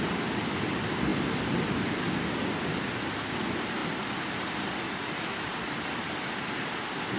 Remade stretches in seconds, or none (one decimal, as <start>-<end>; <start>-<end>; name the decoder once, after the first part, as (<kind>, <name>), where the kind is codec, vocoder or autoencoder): none